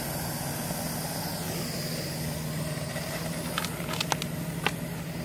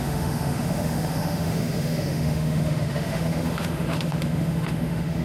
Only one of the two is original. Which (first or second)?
first